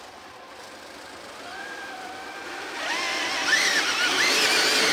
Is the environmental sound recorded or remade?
recorded